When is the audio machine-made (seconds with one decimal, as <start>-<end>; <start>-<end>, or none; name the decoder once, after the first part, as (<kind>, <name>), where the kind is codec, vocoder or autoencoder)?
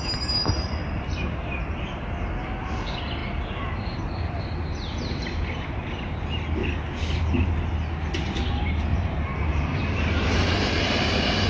0.8-1.9 (vocoder, BigVGAN v2); 8.9-10.5